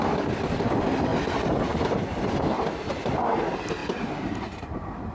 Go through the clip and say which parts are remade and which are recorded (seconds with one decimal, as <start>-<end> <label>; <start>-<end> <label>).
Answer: 0.0-3.8 recorded; 3.8-5.1 remade